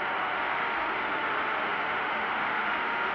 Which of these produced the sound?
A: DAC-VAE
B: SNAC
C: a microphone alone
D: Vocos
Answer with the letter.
A